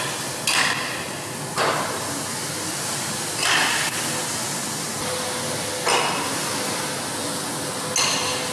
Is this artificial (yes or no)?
no